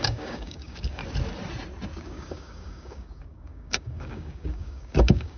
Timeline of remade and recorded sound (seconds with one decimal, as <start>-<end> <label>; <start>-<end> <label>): 0.0-1.0 remade; 1.0-2.0 recorded; 2.0-5.4 remade